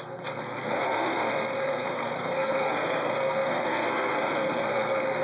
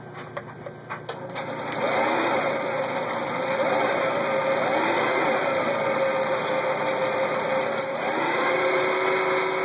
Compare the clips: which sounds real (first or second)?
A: second